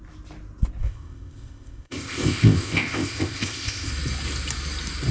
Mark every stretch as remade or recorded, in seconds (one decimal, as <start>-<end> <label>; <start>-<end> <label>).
0.0-0.8 recorded; 0.8-3.9 remade; 3.9-5.1 recorded